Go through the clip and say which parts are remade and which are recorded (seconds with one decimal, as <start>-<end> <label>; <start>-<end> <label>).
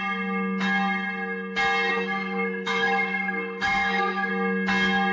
0.0-1.9 recorded; 1.9-4.3 remade; 4.3-5.1 recorded